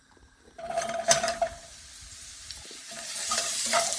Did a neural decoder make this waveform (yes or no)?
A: yes